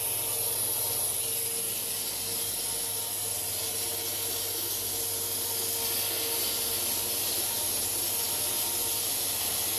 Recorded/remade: recorded